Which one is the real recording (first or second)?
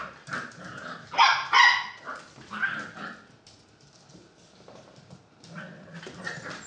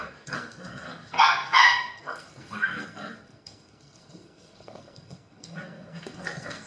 first